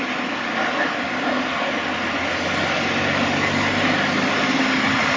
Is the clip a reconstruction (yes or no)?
no